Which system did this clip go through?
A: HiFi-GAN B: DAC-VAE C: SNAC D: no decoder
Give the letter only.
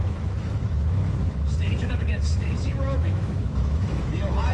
B